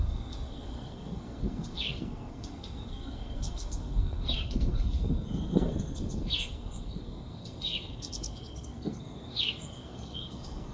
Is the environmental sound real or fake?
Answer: fake